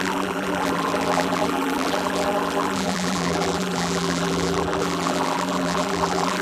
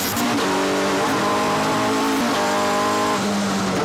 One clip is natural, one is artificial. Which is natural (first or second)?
second